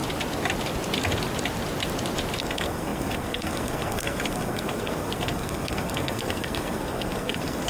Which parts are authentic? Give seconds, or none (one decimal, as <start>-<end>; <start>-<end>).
0.0-2.4